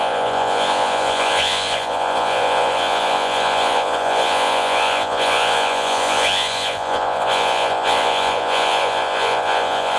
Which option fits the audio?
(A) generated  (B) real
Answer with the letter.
A